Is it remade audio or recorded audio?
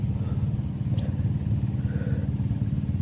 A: recorded